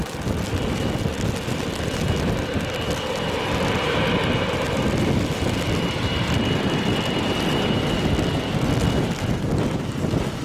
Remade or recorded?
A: recorded